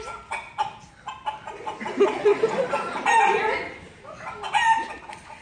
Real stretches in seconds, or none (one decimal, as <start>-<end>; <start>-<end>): 0.0-5.4